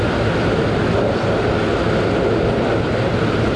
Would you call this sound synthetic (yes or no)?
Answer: no